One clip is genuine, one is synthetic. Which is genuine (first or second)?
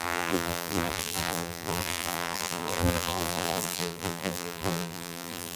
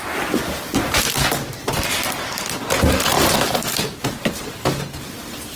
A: second